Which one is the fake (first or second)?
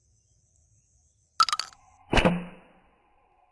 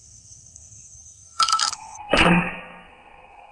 second